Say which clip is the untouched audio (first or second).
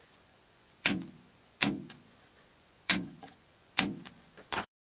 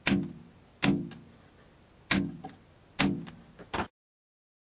second